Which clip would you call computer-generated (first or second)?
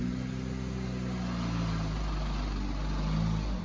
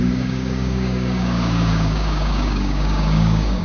second